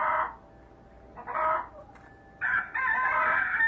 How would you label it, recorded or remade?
recorded